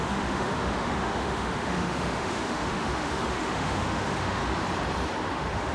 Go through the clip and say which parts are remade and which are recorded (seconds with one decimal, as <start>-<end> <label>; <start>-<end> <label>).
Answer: 0.0-4.4 remade; 4.4-5.3 recorded; 5.3-5.7 remade